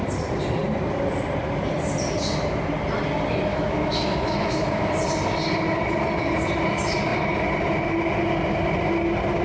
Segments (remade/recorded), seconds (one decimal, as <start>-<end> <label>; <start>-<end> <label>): 0.0-3.5 recorded; 3.5-4.9 remade; 4.9-9.4 recorded